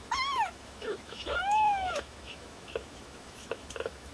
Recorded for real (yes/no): no